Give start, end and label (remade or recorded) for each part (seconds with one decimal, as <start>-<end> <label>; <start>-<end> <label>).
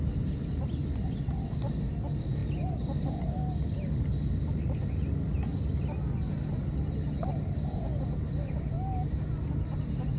0.0-10.2 recorded